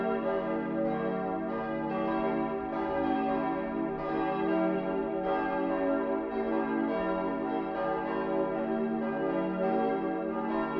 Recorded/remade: recorded